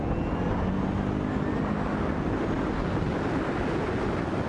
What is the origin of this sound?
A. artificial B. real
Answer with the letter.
B